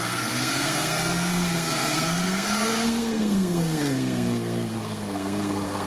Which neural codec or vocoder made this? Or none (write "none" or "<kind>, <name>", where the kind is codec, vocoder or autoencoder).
codec, SNAC